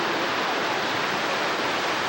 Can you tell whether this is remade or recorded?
recorded